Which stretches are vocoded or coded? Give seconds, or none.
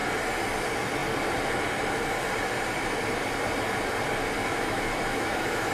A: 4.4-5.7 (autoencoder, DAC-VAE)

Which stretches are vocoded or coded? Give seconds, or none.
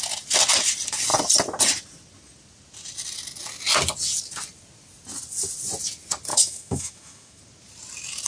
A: 6.3-7.4 (autoencoder, DAC-VAE)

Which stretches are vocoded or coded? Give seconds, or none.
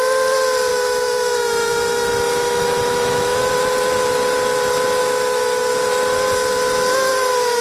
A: 0.7-3.5 (autoencoder, DAC-VAE); 5.0-5.7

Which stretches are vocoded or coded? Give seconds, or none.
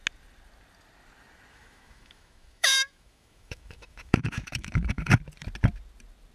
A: 1.5-5.1 (autoencoder, DAC-VAE)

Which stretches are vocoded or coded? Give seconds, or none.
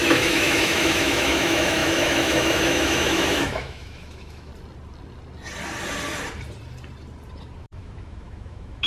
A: 0.0-4.5 (autoencoder, DAC-VAE); 7.6-8.9